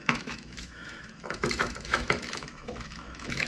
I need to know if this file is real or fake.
fake